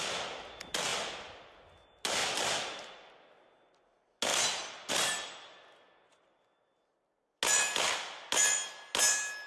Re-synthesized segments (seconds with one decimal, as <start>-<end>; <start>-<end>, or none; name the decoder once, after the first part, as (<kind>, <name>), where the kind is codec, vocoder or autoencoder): 4.3-4.9 (vocoder, BigVGAN v2)